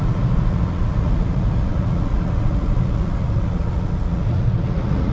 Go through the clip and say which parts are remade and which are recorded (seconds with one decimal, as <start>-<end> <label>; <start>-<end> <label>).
0.0-5.1 remade